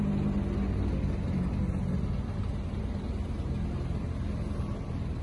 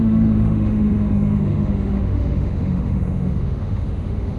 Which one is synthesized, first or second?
second